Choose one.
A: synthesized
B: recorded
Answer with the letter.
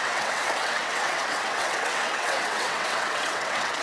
A